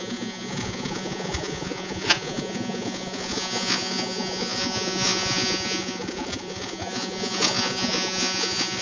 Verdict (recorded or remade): remade